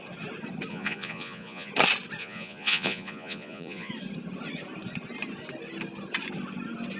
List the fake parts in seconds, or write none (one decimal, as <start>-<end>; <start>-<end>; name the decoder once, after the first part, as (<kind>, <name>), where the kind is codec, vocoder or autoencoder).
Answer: 0.7-1.7 (vocoder, Vocos); 2.2-3.9

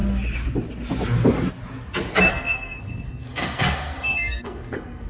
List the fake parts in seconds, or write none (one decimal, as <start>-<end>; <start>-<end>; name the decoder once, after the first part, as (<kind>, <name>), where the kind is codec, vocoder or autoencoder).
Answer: 2.3-5.1 (codec, SNAC)

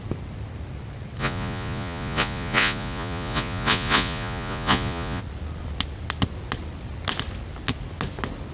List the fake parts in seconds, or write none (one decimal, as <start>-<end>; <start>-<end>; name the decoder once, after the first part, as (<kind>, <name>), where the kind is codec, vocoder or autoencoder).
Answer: 1.2-5.2 (vocoder, Vocos)

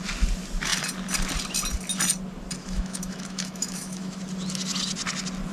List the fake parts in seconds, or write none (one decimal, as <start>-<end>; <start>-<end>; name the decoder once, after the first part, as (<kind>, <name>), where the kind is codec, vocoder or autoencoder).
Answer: 2.6-4.2 (autoencoder, DAC-VAE)

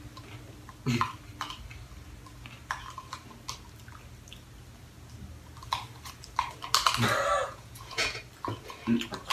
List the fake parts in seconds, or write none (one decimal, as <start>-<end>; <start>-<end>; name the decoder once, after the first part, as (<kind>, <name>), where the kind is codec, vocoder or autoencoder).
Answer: 7.4-8.2 (vocoder, Vocos)

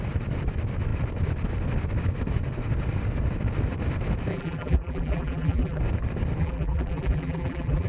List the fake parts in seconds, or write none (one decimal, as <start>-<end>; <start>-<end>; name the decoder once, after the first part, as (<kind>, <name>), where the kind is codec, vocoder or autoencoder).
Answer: 4.3-5.8 (vocoder, BigVGAN v2); 6.4-7.9

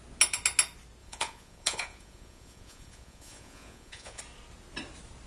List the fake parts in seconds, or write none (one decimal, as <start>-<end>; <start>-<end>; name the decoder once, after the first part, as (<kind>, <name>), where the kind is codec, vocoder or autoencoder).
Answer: 1.0-4.2 (vocoder, Vocos)

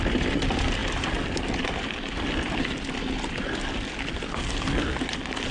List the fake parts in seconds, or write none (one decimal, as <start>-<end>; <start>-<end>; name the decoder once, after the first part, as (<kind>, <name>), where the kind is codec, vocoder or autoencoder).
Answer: none